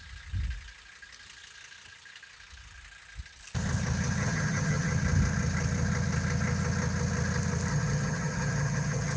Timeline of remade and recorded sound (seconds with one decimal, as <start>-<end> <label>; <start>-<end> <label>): 0.0-4.2 recorded; 4.2-4.9 remade; 4.9-7.7 recorded; 7.7-9.2 remade